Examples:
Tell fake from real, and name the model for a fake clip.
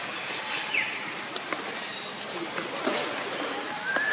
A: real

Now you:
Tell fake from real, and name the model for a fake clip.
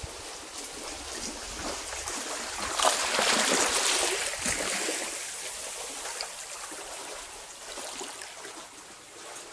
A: real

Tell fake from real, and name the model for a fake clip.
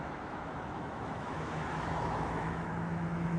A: fake, autoencoder, DAC-VAE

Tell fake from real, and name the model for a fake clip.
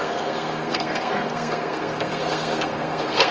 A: fake, codec, SNAC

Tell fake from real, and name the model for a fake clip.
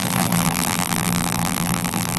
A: fake, vocoder, BigVGAN v2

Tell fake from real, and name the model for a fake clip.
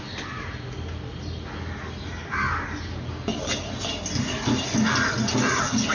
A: real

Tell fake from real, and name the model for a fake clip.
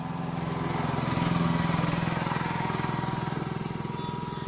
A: real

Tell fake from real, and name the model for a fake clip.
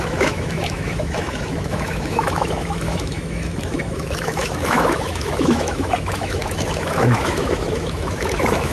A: fake, autoencoder, DAC-VAE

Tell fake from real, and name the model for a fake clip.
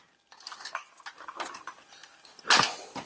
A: real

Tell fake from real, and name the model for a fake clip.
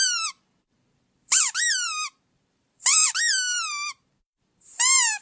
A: fake, vocoder, BigVGAN v2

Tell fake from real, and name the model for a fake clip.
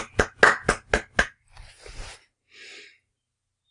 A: real